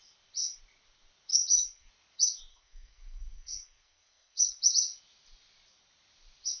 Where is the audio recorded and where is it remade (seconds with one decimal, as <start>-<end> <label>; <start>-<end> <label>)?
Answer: 0.0-1.3 recorded; 1.3-1.9 remade; 1.9-2.5 recorded; 2.5-4.6 remade; 4.6-6.6 recorded